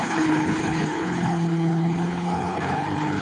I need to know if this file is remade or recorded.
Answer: remade